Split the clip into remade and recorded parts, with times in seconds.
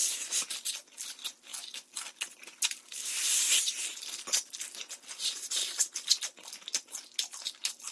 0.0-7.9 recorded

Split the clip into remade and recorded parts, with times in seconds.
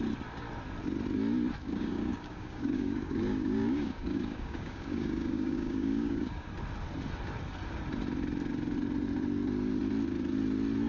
0.0-1.6 recorded; 1.6-6.5 remade; 6.5-10.9 recorded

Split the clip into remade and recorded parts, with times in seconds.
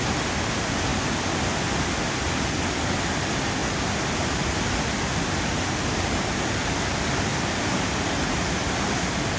0.0-7.3 recorded; 7.3-8.6 remade; 8.6-9.4 recorded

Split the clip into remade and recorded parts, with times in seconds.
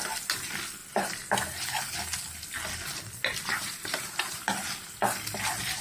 0.0-5.8 recorded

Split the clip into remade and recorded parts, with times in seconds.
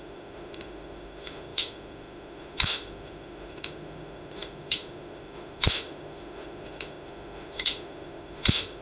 0.0-8.8 remade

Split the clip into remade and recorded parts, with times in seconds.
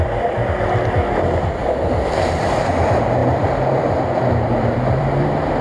0.0-1.6 recorded; 1.6-2.7 remade; 2.7-3.2 recorded; 3.2-5.6 remade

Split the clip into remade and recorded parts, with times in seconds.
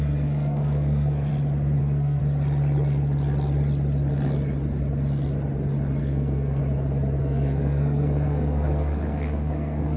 0.0-1.3 remade; 1.3-1.8 recorded; 1.8-2.2 remade; 2.2-6.0 recorded; 6.0-6.6 remade; 6.6-7.2 recorded; 7.2-10.0 remade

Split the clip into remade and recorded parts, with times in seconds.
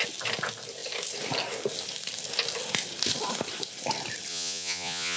0.0-4.3 recorded; 4.3-5.2 remade